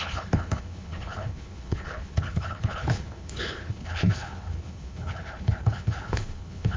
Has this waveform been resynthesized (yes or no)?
yes